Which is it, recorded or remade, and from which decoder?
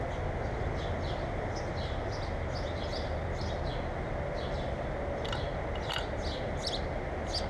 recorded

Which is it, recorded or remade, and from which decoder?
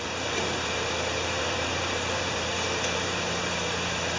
remade, vocoder, BigVGAN v2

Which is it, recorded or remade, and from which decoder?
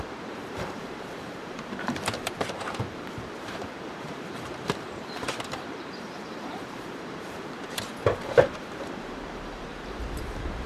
remade, vocoder, BigVGAN v2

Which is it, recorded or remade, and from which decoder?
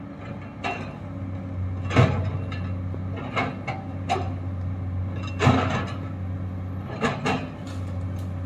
recorded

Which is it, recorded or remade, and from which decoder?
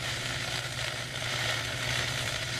remade, vocoder, BigVGAN v2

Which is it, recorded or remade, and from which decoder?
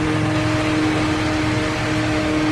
recorded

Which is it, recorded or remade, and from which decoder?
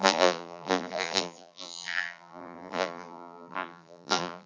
remade, vocoder, BigVGAN v2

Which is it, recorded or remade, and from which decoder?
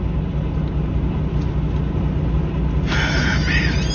recorded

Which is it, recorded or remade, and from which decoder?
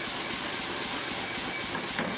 recorded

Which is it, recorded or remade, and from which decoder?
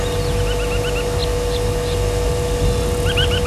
recorded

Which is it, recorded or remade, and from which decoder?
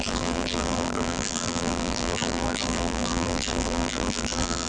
remade, vocoder, BigVGAN v2